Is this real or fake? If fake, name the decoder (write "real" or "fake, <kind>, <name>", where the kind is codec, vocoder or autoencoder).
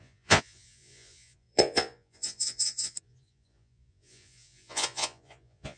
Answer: fake, vocoder, Vocos